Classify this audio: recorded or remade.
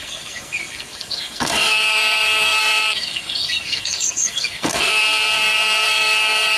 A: remade